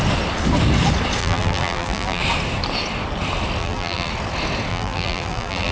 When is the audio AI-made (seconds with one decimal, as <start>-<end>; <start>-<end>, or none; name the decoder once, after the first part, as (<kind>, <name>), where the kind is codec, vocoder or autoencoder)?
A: 1.2-2.2 (vocoder, BigVGAN v2); 3.6-4.1; 4.7-5.7